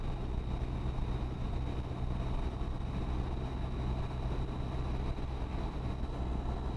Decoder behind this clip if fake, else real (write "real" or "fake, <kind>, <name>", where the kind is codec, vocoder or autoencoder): real